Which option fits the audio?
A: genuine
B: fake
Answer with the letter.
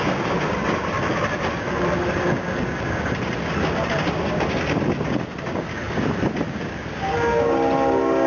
A